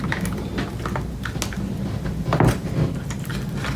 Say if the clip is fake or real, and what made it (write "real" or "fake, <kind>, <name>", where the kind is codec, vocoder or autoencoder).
real